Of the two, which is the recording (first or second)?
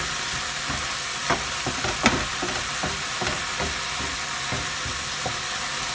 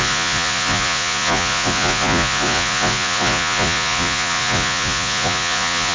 first